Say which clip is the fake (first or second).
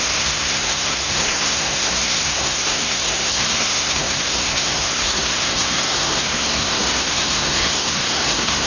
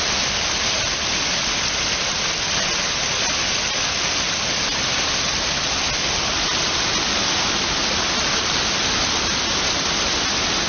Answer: first